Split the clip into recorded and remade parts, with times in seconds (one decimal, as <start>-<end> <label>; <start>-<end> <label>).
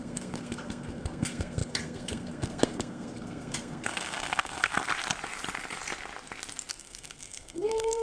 0.0-4.7 remade; 4.7-6.7 recorded; 6.7-8.0 remade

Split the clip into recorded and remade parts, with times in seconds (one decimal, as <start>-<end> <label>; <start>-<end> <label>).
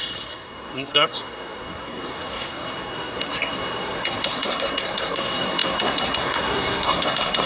0.0-7.5 remade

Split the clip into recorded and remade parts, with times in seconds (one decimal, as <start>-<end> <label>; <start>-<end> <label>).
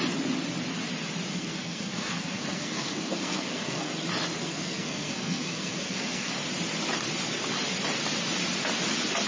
0.0-1.3 recorded; 1.3-3.9 remade; 3.9-4.4 recorded; 4.4-6.3 remade; 6.3-9.3 recorded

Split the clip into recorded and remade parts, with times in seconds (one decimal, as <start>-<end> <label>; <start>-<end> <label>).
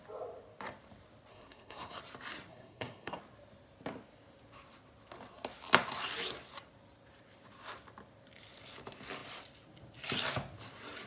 0.0-1.3 recorded; 1.3-2.0 remade; 2.0-2.5 recorded; 2.5-3.2 remade; 3.2-11.1 recorded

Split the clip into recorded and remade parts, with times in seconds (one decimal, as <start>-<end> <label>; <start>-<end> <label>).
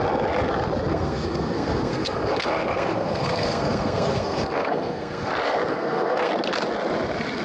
0.0-0.9 recorded; 0.9-5.3 remade; 5.3-5.7 recorded; 5.7-6.3 remade; 6.3-7.4 recorded